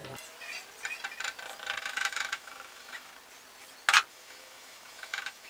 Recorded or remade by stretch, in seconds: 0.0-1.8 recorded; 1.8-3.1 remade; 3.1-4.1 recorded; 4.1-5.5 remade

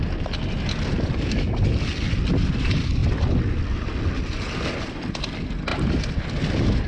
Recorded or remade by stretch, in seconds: 0.0-6.9 recorded

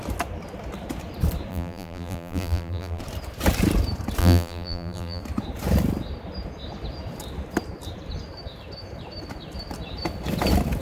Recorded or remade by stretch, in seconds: 0.0-1.5 recorded; 1.5-3.0 remade; 3.0-4.2 recorded; 4.2-5.2 remade; 5.2-10.8 recorded

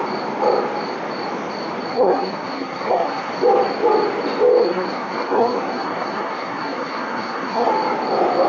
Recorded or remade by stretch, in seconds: 0.0-1.9 recorded; 1.9-3.3 remade; 3.3-4.6 recorded; 4.6-7.7 remade; 7.7-8.5 recorded

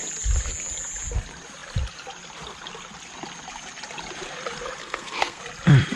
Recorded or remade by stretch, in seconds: 0.0-4.8 recorded; 4.8-5.4 remade; 5.4-6.0 recorded